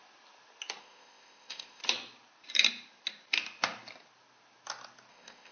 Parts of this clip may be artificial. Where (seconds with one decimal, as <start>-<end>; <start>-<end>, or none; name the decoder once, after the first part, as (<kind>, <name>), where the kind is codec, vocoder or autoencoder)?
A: 0.8-1.8 (codec, ZipCodec); 5.1-5.5